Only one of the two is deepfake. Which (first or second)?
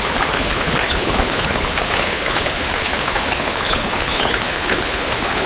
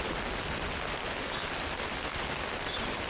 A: first